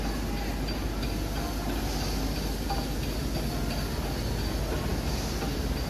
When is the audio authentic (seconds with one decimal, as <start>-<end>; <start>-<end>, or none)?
0.0-5.9